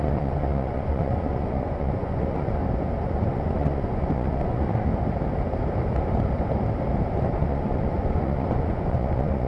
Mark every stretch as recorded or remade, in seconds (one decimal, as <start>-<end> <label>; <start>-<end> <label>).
0.0-2.6 remade; 2.6-3.1 recorded; 3.1-4.9 remade; 4.9-7.4 recorded; 7.4-9.5 remade